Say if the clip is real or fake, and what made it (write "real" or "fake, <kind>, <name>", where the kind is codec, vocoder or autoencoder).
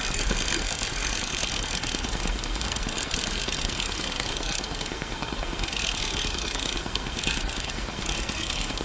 fake, codec, SNAC